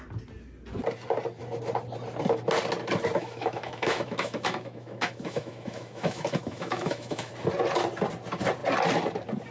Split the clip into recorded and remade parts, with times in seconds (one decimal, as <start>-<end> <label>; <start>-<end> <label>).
0.0-3.2 recorded; 3.2-7.3 remade; 7.3-9.5 recorded